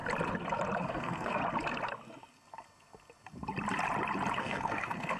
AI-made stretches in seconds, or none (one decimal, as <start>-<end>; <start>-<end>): 0.8-1.4; 4.4-5.2